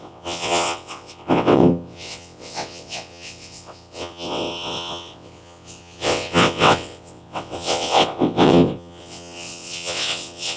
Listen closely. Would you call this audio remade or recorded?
remade